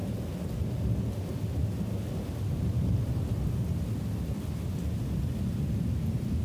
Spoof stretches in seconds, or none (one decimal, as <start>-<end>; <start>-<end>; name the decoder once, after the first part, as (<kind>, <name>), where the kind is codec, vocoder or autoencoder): none